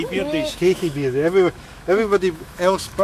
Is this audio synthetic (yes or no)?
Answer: yes